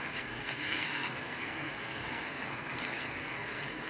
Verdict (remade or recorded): remade